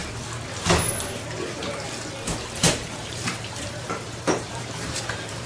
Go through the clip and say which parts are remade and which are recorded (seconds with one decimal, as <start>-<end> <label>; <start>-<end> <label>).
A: 0.0-2.6 recorded; 2.6-5.5 remade